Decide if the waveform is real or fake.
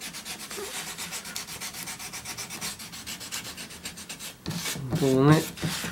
real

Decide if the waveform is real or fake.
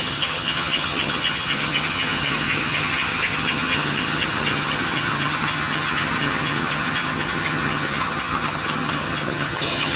fake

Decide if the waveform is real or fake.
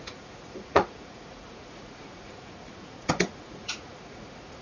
fake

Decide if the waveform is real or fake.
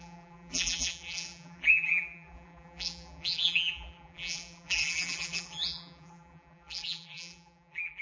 fake